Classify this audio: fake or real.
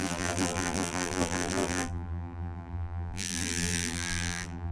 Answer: fake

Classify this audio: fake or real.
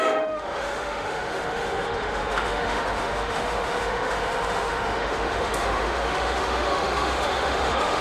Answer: fake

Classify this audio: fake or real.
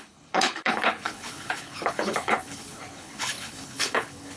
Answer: fake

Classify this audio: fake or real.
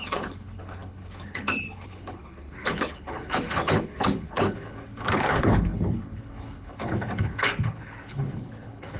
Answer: fake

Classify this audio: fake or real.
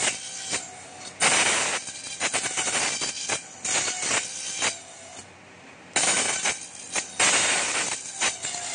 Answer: real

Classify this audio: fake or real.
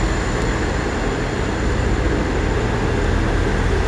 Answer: real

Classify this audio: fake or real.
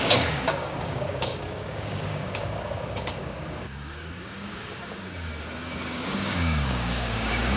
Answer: fake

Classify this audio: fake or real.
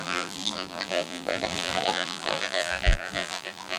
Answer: fake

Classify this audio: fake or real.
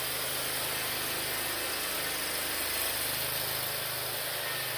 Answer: real